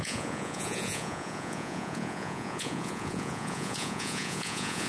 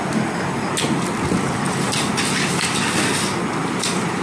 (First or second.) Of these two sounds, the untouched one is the second